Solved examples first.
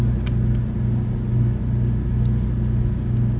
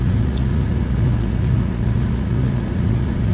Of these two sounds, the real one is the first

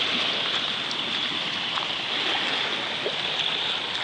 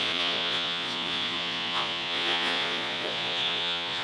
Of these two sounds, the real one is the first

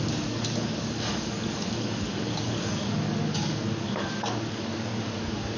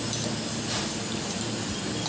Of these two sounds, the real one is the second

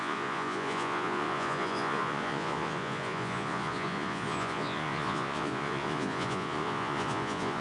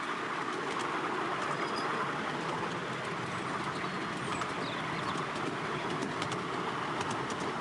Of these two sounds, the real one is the second